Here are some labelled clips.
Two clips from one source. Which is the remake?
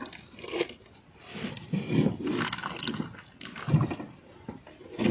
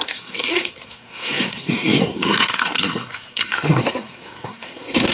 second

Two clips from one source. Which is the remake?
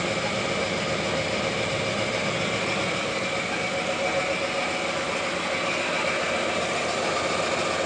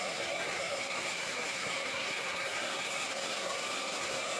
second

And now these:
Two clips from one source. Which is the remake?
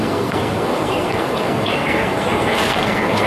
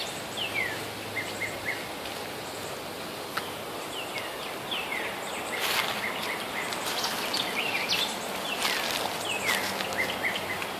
first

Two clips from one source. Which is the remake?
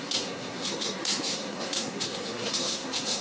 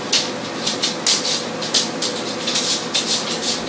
first